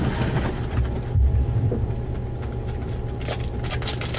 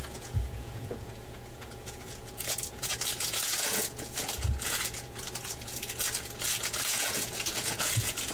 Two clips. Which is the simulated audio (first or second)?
second